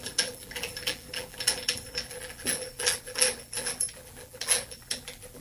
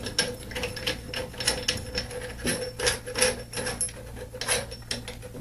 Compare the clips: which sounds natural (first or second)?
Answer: second